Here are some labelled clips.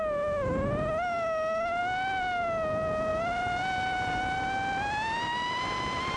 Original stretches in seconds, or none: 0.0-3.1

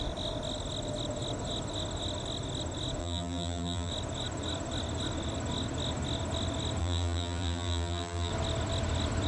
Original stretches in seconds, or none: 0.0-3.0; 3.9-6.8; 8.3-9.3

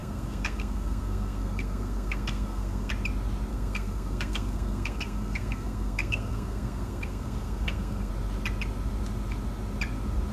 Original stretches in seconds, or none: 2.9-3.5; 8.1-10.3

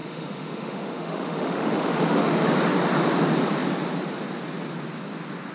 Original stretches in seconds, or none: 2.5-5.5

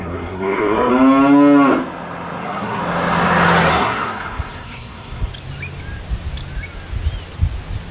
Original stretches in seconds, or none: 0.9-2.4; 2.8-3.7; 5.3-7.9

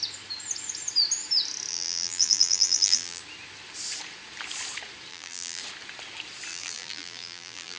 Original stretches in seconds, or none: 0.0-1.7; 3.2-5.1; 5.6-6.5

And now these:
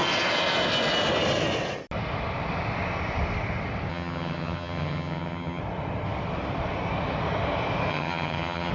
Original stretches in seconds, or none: 0.0-3.9; 5.6-7.9

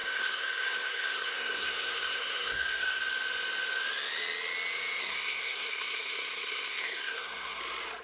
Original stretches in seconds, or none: 3.0-5.0; 7.6-8.0